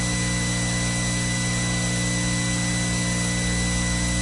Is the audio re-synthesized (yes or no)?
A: no